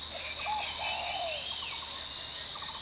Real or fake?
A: real